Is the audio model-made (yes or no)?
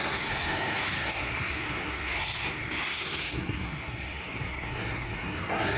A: yes